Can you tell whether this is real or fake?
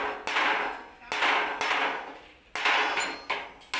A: real